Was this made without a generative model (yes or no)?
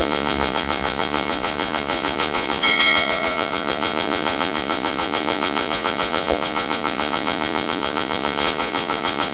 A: no